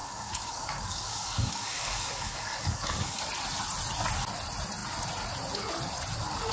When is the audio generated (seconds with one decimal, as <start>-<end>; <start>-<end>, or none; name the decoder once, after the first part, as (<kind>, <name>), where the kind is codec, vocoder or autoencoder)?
0.0-3.2 (codec, DAC)